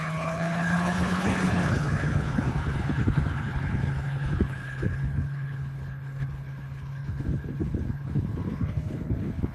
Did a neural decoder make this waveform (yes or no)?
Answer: yes